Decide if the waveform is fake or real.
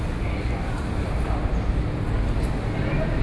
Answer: real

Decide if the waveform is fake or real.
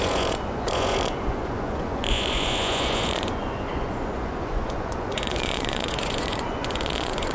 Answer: fake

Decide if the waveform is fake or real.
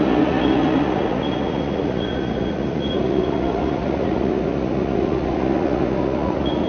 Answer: fake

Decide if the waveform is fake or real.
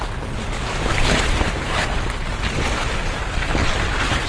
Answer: real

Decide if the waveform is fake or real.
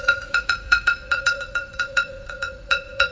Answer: fake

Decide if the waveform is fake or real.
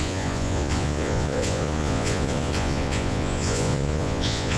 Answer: fake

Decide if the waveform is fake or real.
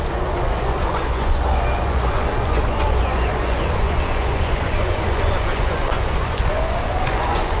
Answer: fake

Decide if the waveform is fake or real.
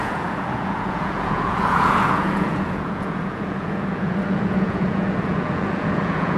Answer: fake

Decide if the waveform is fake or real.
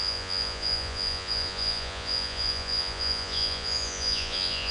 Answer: fake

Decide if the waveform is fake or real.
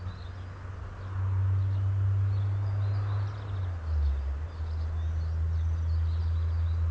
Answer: real